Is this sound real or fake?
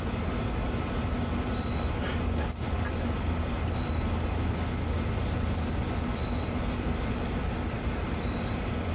real